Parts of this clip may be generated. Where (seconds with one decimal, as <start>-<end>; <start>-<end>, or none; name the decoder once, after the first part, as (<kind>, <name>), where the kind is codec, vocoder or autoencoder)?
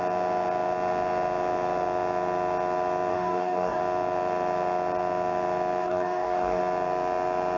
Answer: 3.1-3.8 (codec, DAC); 5.8-6.6